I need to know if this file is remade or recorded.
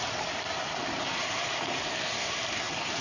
remade